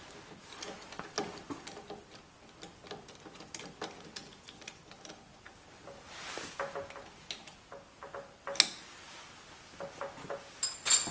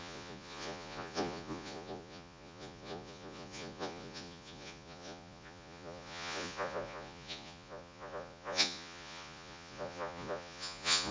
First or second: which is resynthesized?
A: second